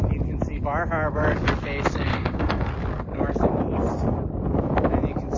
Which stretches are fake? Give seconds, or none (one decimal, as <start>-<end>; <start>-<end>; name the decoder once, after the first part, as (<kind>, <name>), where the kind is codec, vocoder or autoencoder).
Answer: 2.1-2.7 (codec, SNAC)